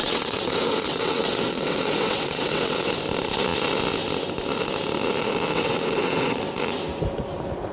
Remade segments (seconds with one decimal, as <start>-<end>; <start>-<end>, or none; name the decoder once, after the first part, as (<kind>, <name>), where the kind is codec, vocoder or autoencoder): 0.0-2.9 (vocoder, WaveNeXt); 5.5-6.4